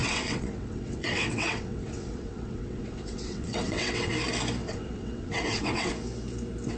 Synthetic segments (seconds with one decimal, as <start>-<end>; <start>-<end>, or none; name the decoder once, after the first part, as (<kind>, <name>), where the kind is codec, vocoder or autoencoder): 0.0-4.1 (vocoder, WaveNeXt); 4.6-5.9